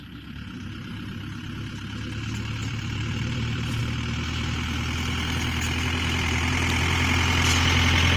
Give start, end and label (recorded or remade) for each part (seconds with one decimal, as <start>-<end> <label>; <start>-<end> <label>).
0.0-2.6 recorded; 2.6-3.8 remade; 3.8-8.2 recorded